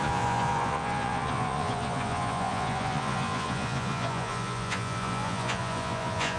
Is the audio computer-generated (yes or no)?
yes